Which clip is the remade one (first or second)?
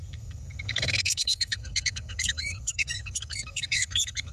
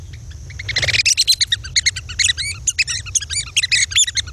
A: first